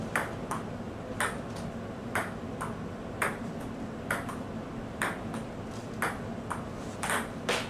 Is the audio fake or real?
real